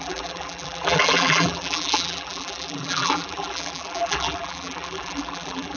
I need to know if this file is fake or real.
fake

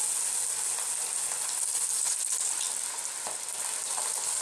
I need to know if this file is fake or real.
real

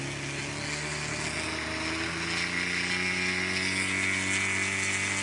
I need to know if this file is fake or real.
real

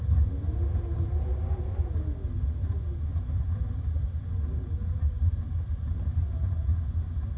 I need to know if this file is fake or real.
real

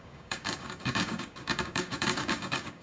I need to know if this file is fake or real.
fake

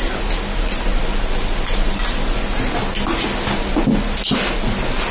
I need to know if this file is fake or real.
real